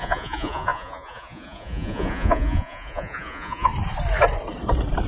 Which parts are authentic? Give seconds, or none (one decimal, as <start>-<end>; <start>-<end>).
3.7-5.1